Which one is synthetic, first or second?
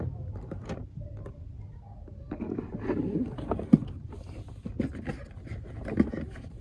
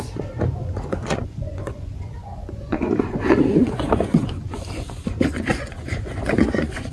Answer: second